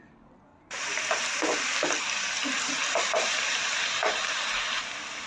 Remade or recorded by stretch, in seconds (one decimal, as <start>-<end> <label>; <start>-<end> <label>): 0.0-0.5 recorded; 0.5-1.3 remade; 1.3-5.3 recorded